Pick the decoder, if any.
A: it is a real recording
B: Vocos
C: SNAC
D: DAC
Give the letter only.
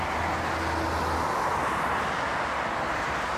A